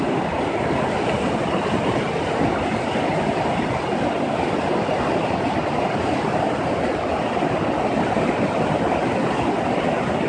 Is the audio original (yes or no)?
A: yes